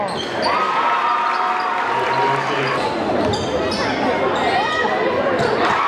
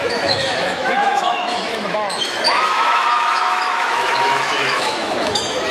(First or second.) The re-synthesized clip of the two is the second